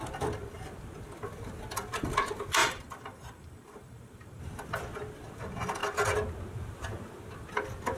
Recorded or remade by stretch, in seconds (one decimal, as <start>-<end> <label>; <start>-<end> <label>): 0.0-2.6 recorded; 2.6-4.4 remade; 4.4-8.0 recorded